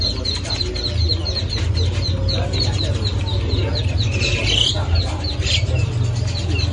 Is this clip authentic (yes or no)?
yes